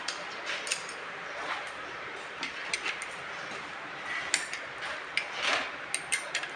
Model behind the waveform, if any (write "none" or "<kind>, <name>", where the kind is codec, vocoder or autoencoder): none